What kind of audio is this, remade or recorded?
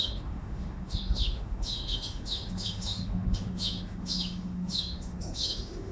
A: remade